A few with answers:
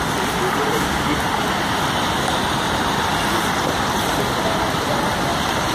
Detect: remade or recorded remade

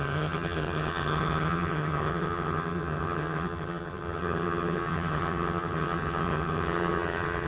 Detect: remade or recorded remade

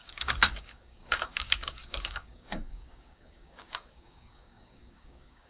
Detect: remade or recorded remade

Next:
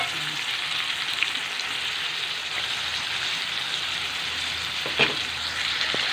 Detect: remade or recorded recorded